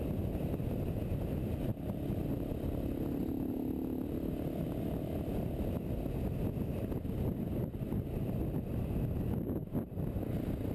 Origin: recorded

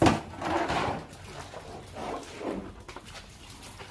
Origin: recorded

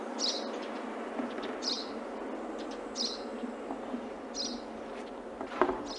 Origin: recorded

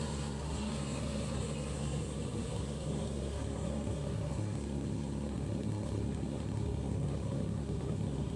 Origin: remade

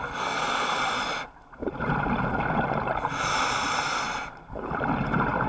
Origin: recorded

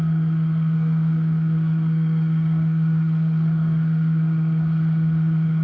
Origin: remade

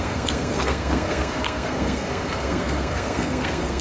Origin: remade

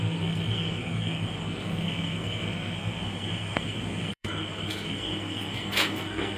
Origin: remade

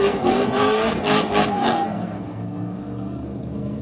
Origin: remade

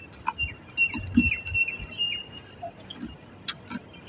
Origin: recorded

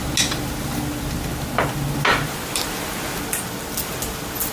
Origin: recorded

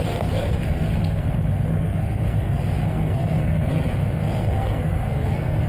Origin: remade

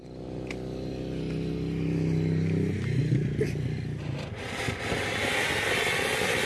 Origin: recorded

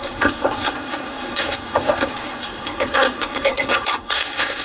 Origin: remade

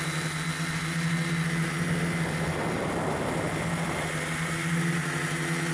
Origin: recorded